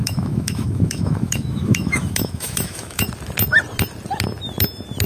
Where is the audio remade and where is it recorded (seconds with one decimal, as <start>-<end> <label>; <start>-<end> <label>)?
0.0-3.1 remade; 3.1-5.1 recorded

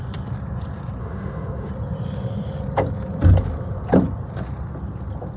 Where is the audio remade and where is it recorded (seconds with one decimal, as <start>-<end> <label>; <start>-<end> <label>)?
0.0-1.0 recorded; 1.0-1.7 remade; 1.7-5.4 recorded

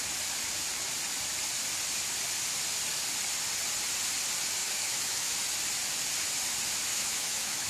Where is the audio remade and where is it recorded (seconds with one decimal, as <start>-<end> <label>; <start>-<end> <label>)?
0.0-4.6 recorded; 4.6-5.3 remade; 5.3-6.9 recorded; 6.9-7.7 remade

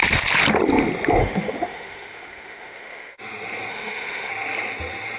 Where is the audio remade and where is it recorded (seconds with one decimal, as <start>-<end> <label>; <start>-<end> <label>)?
0.0-1.2 recorded; 1.2-3.2 remade; 3.2-3.7 recorded; 3.7-4.3 remade; 4.3-5.2 recorded

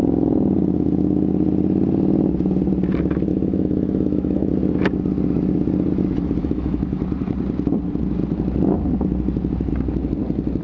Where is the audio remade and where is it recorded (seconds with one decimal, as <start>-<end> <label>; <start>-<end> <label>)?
0.0-3.3 recorded; 3.3-4.5 remade; 4.5-6.4 recorded; 6.4-7.0 remade; 7.0-10.6 recorded

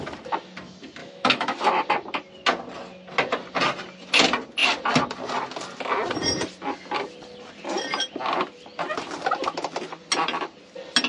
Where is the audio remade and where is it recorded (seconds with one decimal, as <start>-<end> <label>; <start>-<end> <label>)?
0.0-1.0 recorded; 1.0-1.8 remade; 1.8-11.1 recorded